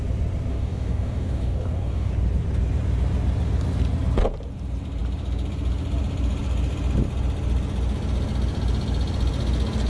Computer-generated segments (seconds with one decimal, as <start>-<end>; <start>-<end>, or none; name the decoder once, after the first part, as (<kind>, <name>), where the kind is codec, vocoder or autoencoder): 0.5-2.1 (codec, DAC)